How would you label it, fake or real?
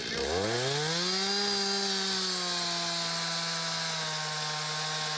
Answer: real